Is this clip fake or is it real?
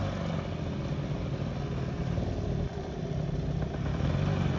real